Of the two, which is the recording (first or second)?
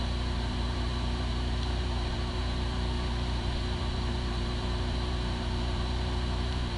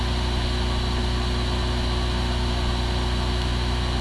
second